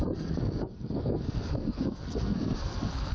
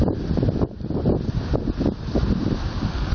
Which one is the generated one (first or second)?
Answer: first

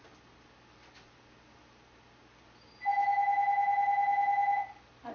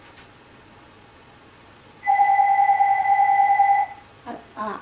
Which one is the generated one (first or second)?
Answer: second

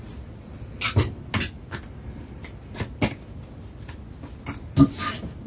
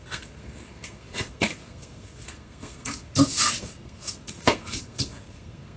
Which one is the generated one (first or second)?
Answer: second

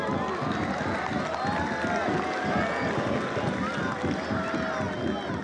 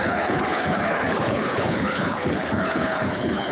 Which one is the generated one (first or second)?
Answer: second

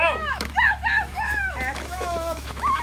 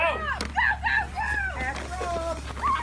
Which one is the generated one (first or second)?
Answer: first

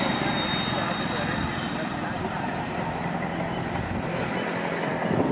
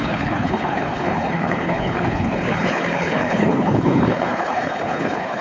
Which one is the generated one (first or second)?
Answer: second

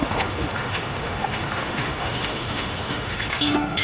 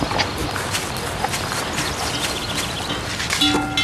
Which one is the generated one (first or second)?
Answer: first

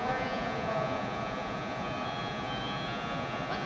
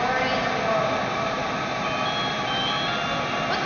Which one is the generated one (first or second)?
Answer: first